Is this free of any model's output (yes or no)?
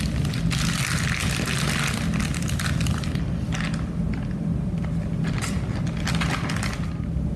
yes